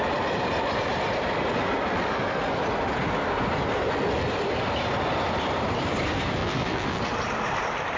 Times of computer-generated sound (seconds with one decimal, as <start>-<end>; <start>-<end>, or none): 6.4-7.0